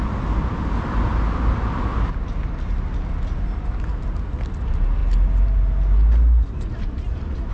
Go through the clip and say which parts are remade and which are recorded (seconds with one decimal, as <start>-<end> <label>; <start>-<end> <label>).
0.0-7.5 recorded